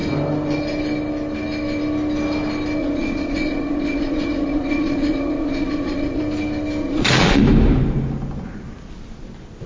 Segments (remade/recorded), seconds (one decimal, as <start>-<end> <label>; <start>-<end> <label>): 0.0-2.8 recorded; 2.8-6.2 remade; 6.2-6.8 recorded; 6.8-7.4 remade; 7.4-9.7 recorded

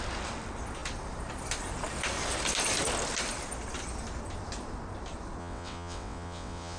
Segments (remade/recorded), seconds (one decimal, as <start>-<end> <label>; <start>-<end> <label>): 0.0-5.4 recorded; 5.4-6.8 remade

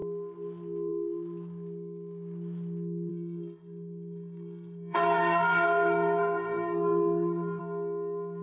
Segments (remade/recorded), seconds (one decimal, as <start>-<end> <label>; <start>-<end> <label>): 0.0-3.1 recorded; 3.1-7.6 remade; 7.6-8.4 recorded

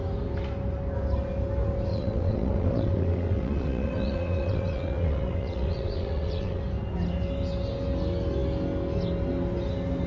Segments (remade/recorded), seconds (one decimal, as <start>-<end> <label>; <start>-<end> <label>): 0.0-1.9 recorded; 1.9-6.6 remade; 6.6-10.1 recorded

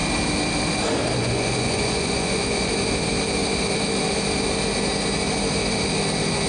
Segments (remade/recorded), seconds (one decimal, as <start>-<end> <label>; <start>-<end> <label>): 0.0-1.2 recorded; 1.2-2.7 remade; 2.7-6.5 recorded

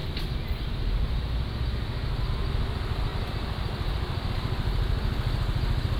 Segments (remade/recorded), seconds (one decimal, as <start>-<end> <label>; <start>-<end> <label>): 0.0-6.0 recorded

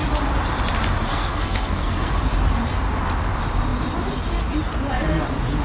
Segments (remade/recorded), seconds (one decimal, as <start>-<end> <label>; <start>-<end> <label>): 0.0-1.1 recorded; 1.1-2.1 remade; 2.1-5.6 recorded